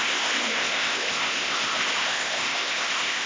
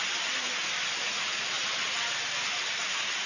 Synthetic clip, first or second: first